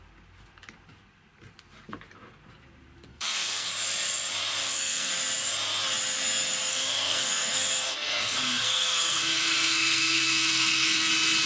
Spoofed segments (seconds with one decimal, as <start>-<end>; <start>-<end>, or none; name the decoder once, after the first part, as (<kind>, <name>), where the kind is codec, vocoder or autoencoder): 3.1-3.7 (codec, SNAC); 4.6-5.1; 6.7-11.1